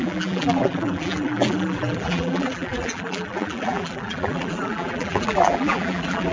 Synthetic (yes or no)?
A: yes